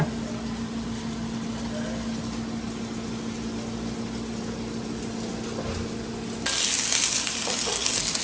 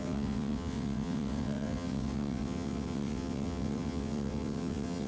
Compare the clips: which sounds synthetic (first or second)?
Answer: second